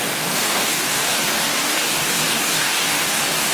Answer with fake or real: fake